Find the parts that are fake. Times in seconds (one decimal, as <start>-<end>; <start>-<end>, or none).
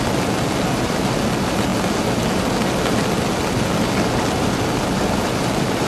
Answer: none